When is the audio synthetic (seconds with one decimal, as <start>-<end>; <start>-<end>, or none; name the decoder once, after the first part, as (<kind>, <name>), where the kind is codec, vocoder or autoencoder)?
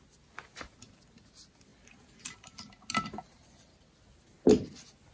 none